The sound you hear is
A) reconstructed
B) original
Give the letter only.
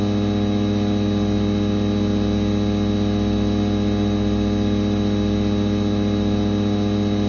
B